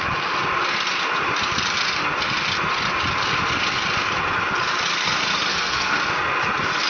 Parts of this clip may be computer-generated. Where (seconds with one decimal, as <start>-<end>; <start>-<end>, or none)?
5.5-6.0

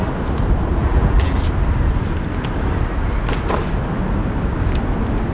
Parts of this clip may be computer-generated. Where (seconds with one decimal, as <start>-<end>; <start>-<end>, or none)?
0.8-1.4

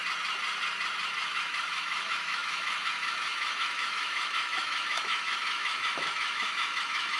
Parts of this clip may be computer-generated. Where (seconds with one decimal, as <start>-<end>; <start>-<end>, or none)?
1.2-7.2

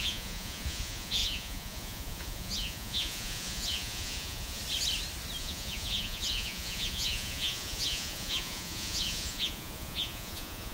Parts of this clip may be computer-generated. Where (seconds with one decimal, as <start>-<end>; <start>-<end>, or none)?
0.0-4.6; 5.4-10.7

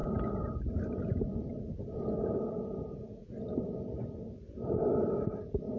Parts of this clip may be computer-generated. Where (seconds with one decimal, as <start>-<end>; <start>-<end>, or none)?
none

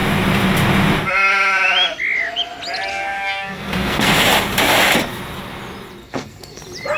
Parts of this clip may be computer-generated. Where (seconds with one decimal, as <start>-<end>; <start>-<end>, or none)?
2.9-4.2; 6.0-6.6

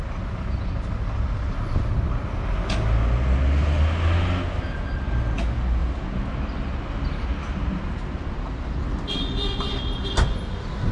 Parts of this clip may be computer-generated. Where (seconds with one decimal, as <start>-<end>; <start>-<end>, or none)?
none

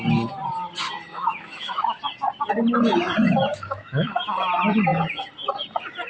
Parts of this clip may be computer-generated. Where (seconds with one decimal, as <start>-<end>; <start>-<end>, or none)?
1.1-2.0; 3.5-4.3